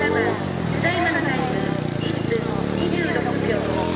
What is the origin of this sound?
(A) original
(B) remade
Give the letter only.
A